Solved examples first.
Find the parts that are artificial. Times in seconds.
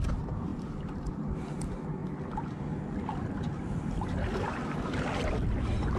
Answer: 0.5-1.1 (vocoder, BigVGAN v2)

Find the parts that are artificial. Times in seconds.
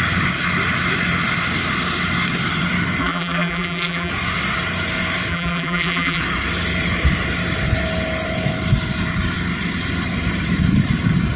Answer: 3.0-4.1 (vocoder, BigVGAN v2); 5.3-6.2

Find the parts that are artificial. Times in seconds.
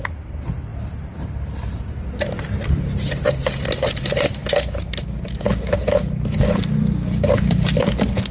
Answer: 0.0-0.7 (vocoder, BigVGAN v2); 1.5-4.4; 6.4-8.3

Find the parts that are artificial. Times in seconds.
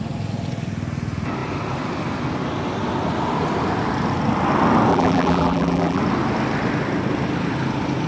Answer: 4.9-6.0 (vocoder, BigVGAN v2)